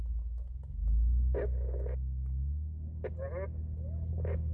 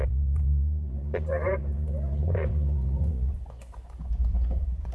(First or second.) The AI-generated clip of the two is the second